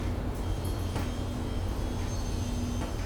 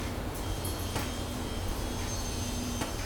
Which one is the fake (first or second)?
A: second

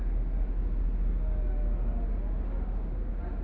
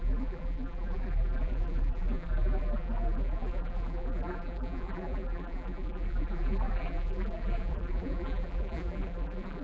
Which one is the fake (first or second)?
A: second